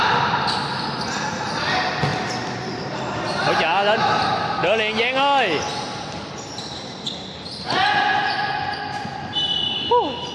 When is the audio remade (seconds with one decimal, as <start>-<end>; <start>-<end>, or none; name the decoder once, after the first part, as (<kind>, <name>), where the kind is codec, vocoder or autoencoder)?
none